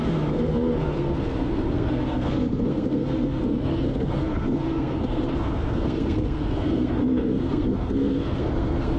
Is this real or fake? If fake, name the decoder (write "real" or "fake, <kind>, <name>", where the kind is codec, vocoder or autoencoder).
fake, codec, SNAC